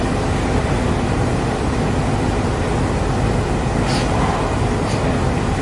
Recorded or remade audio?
recorded